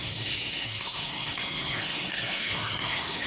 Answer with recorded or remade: remade